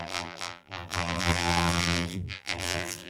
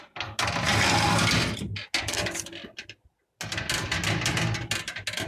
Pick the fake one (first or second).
first